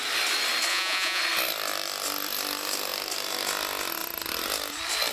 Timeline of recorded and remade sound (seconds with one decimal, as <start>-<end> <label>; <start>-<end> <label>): 0.0-0.7 recorded; 0.7-1.2 remade; 1.2-5.1 recorded